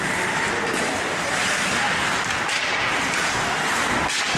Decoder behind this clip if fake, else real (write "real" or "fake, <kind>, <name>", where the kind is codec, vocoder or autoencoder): real